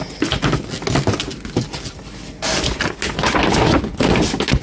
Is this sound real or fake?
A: real